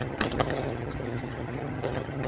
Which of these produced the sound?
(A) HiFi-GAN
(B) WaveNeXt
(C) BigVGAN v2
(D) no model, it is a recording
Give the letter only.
A